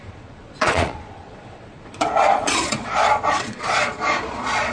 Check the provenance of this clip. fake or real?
fake